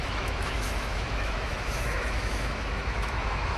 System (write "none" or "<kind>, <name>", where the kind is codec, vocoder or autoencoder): autoencoder, DAC-VAE